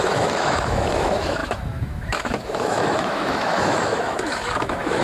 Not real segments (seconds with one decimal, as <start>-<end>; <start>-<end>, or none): 0.0-5.0

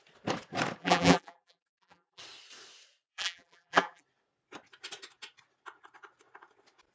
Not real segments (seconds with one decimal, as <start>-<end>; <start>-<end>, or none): 0.8-2.2; 3.1-4.0